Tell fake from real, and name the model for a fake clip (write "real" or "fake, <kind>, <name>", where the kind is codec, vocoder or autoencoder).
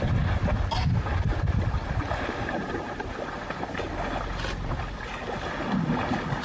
real